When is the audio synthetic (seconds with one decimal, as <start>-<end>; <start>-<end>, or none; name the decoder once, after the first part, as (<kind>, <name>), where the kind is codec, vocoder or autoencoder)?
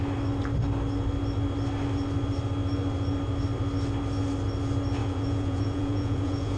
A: 5.0-6.6 (vocoder, Vocos)